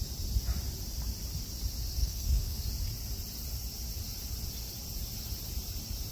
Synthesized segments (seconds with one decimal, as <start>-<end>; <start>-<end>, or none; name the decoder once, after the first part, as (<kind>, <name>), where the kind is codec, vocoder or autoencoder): 2.0-2.6 (codec, SNAC)